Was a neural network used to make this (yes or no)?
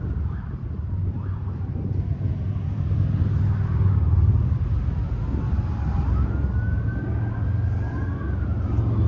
no